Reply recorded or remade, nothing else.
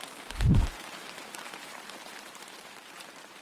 remade